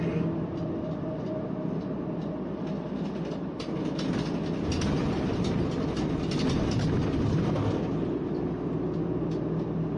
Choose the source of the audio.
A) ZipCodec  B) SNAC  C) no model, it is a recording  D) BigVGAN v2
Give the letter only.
C